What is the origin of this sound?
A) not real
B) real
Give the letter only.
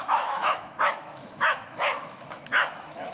A